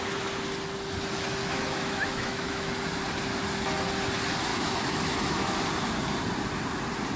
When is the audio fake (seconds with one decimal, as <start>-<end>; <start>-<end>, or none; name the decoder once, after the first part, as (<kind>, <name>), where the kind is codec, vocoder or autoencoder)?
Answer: 1.4-2.7 (autoencoder, DAC-VAE); 4.5-5.6